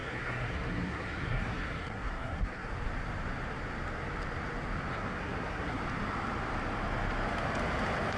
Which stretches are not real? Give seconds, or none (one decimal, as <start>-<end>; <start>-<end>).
0.0-2.7; 4.9-5.8